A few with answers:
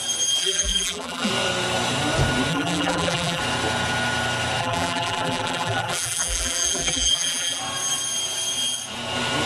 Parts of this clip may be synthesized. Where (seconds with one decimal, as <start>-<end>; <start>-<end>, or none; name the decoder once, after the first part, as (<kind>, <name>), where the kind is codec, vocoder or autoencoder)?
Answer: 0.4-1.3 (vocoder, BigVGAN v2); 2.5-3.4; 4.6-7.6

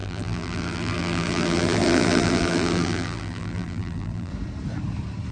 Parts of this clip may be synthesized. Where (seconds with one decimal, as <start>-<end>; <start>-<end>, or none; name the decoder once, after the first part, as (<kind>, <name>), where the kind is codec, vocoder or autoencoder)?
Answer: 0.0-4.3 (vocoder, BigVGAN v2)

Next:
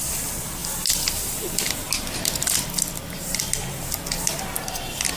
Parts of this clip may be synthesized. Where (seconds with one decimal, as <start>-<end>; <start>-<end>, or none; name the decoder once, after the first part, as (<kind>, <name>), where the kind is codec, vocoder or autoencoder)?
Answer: none